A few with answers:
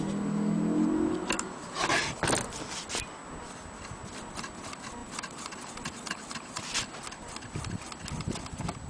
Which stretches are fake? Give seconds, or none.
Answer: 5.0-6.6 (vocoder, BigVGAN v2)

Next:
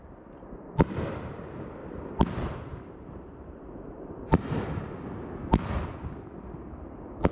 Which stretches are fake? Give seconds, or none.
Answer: 1.8-4.9 (vocoder, BigVGAN v2)

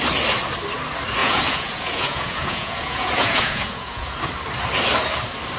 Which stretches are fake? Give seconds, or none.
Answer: 1.2-4.2 (vocoder, Vocos)

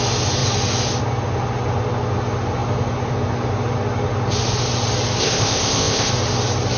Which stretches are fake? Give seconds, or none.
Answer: 5.2-6.1 (codec, ZipCodec)

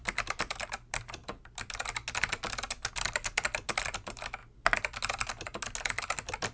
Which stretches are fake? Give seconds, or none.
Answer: 0.0-1.2 (vocoder, BigVGAN v2); 2.9-4.4; 5.9-6.5

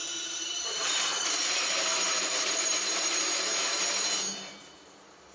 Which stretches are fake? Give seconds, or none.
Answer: 0.0-3.2 (vocoder, BigVGAN v2)